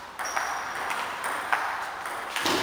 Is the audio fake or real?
fake